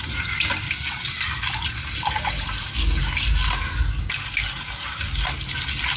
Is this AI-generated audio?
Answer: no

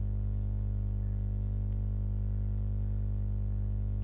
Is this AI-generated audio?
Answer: no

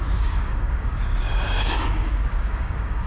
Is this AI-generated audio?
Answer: yes